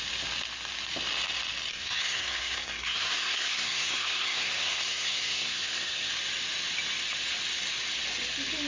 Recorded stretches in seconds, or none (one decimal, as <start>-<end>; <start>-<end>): 0.0-1.7; 6.1-8.7